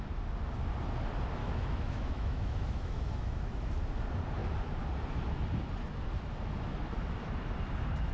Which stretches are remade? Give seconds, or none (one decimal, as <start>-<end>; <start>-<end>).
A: 1.4-3.7